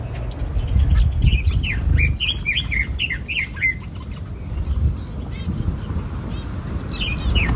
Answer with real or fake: real